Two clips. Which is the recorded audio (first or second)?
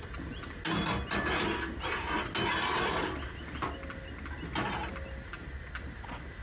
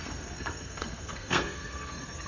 first